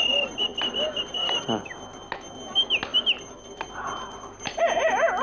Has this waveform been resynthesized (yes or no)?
no